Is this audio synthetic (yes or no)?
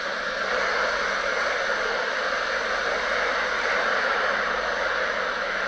no